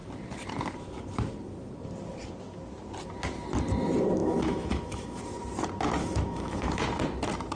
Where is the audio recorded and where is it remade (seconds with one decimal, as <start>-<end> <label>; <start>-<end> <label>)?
0.0-4.2 recorded; 4.2-5.2 remade; 5.2-6.0 recorded; 6.0-6.8 remade; 6.8-7.6 recorded